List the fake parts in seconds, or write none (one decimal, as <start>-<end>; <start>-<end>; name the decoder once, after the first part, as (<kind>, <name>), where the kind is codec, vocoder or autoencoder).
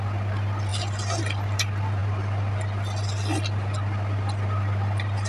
none